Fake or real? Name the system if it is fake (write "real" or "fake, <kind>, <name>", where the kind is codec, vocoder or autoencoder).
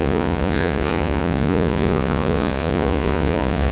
fake, vocoder, Vocos